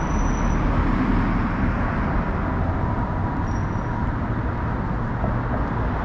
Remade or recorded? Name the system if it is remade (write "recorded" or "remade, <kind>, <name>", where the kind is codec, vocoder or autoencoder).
recorded